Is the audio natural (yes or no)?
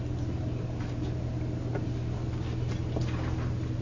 yes